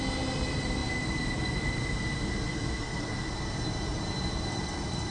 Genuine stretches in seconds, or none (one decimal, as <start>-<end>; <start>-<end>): 0.0-2.5; 3.1-5.1